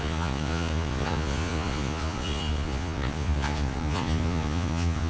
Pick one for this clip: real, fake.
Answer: fake